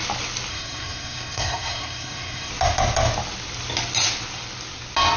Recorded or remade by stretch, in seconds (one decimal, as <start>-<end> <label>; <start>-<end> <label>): 0.0-0.5 recorded; 0.5-2.5 remade; 2.5-5.2 recorded